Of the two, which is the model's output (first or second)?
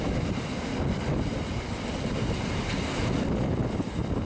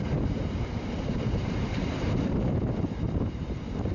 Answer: second